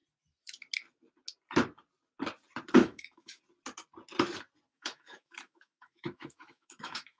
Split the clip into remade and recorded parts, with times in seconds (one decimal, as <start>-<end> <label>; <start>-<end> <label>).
0.0-2.8 recorded; 2.8-3.4 remade; 3.4-4.7 recorded; 4.7-7.2 remade